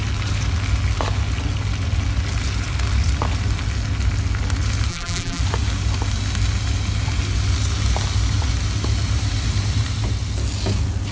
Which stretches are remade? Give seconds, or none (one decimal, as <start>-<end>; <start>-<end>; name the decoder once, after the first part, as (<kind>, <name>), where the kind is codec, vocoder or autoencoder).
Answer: 4.9-5.4 (vocoder, BigVGAN v2)